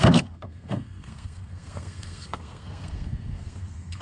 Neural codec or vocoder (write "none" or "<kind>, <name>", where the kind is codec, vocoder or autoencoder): codec, SNAC